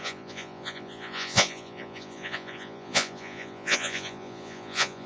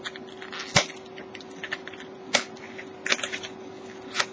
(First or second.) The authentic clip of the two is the second